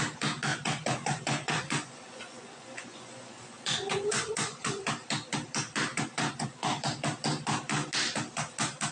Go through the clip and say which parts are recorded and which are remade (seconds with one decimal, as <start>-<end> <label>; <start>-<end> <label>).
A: 0.0-0.5 recorded; 0.5-4.8 remade; 4.8-5.9 recorded; 5.9-6.7 remade; 6.7-8.9 recorded